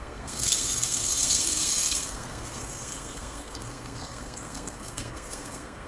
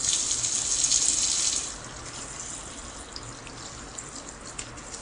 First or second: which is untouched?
second